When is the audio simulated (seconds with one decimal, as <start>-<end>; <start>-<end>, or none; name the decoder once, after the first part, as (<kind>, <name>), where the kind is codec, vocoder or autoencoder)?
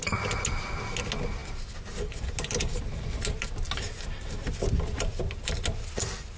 none